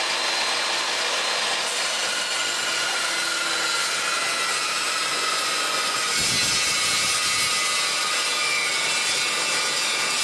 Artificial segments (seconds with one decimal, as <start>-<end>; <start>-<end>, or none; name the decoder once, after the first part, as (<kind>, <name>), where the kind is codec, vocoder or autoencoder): 2.4-3.1 (vocoder, Vocos); 5.1-6.1